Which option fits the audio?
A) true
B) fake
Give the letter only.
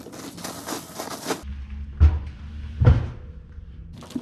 A